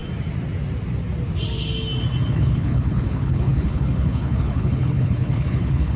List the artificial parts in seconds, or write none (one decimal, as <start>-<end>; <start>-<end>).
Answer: 2.3-6.0